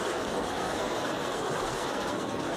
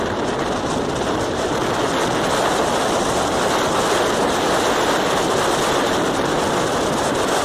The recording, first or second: second